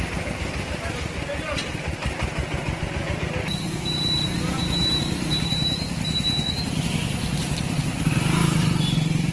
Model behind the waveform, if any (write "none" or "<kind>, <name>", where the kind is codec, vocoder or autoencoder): none